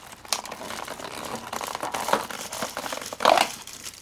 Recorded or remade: remade